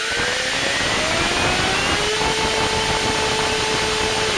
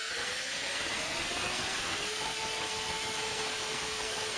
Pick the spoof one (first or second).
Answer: second